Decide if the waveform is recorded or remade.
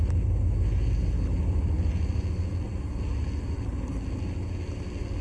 recorded